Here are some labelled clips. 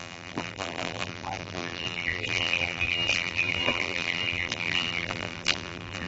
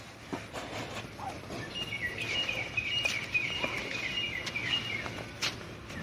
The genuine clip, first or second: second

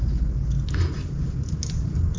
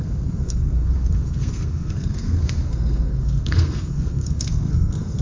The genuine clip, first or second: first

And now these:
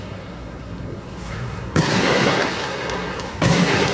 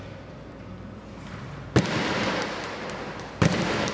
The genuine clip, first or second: second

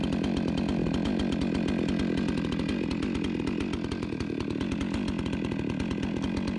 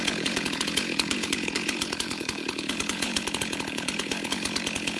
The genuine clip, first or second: first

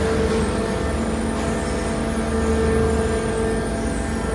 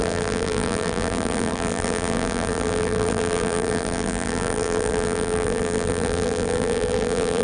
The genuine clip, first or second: first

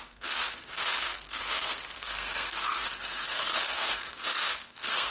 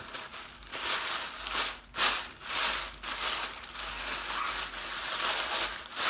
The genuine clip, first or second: second